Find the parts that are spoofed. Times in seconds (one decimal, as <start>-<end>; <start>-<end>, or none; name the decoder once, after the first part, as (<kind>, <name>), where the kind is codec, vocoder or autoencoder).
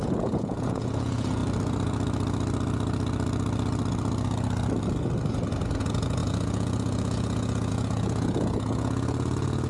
0.0-1.4 (vocoder, Vocos); 5.8-9.7